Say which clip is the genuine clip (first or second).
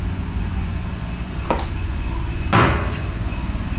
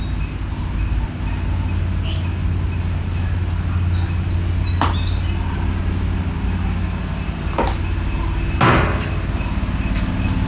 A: second